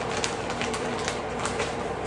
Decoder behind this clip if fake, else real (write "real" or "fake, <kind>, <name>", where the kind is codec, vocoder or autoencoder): fake, vocoder, BigVGAN v2